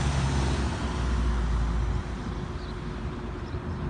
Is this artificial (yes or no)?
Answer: no